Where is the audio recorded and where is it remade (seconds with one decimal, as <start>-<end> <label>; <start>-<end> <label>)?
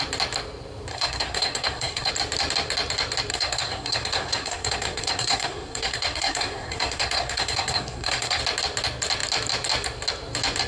0.0-0.9 recorded; 0.9-2.1 remade; 2.1-3.3 recorded; 3.3-8.4 remade; 8.4-10.7 recorded